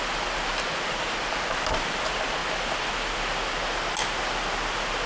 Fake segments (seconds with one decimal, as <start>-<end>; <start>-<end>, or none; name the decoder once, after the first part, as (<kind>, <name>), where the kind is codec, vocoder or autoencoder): none